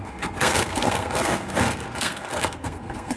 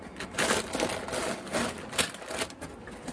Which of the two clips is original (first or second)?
second